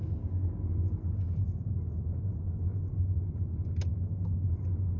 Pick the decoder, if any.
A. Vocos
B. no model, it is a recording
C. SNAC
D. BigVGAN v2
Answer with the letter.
B